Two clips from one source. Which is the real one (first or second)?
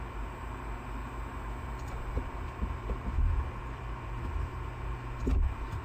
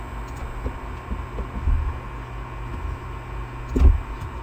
second